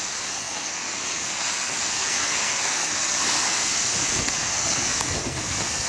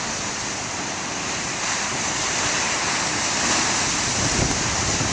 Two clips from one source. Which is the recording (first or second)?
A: second